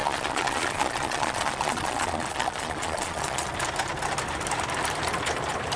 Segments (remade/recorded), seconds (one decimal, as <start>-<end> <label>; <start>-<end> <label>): 0.0-3.5 remade; 3.5-5.8 recorded